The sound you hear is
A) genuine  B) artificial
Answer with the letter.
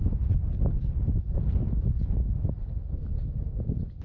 A